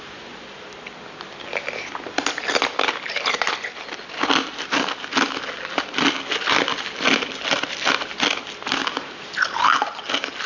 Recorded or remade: recorded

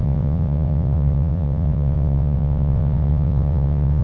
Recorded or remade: remade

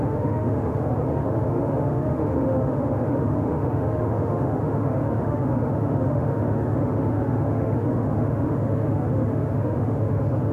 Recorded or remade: remade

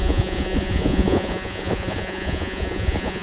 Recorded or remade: remade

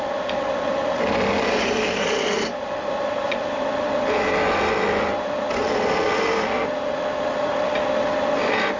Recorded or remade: recorded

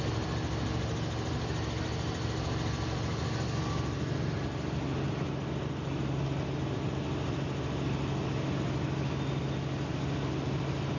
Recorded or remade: recorded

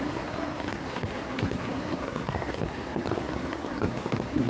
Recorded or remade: remade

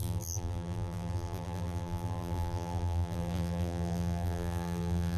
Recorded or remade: remade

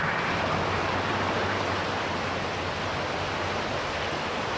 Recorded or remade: recorded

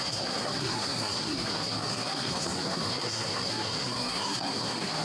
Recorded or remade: remade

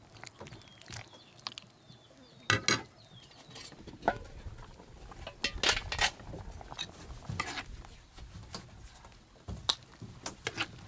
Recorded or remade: recorded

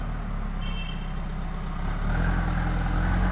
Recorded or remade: recorded